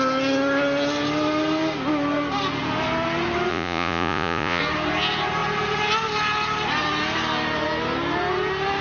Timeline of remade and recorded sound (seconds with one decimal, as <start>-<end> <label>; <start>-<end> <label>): 0.0-3.5 recorded; 3.5-4.6 remade; 4.6-8.8 recorded